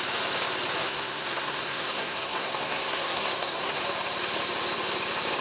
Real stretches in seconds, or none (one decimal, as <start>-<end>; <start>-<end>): 0.0-0.8; 3.8-5.4